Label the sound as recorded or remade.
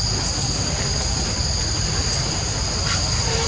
recorded